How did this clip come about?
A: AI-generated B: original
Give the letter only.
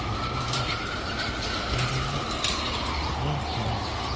B